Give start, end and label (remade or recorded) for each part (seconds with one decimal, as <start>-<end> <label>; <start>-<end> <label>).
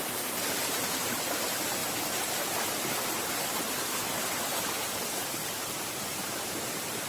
0.0-1.8 remade; 1.8-3.9 recorded; 3.9-7.1 remade